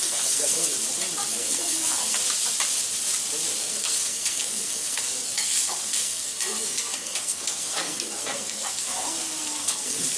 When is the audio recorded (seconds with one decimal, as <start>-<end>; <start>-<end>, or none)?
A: 0.7-1.3; 2.2-3.6